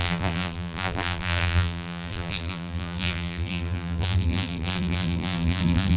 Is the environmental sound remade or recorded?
remade